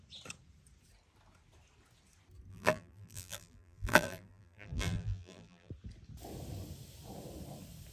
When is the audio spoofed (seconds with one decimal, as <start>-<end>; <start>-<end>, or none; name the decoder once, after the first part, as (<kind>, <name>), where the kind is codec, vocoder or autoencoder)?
2.5-5.7 (vocoder, BigVGAN v2)